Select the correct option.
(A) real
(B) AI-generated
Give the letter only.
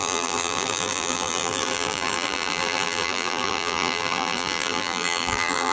B